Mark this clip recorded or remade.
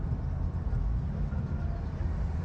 remade